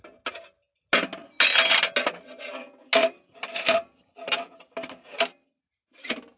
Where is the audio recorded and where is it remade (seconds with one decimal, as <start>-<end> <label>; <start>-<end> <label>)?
0.0-3.0 recorded; 3.0-4.4 remade; 4.4-5.0 recorded; 5.0-5.6 remade; 5.6-6.4 recorded